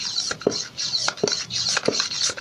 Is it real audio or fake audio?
real